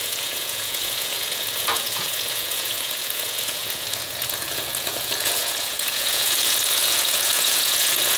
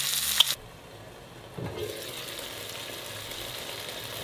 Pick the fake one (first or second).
first